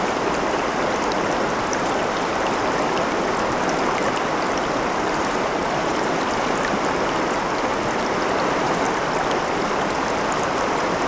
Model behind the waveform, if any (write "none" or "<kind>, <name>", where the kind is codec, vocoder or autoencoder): none